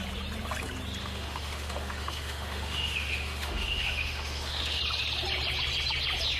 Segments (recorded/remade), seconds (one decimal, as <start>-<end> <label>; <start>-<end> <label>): 0.0-1.0 recorded; 1.0-4.8 remade; 4.8-6.4 recorded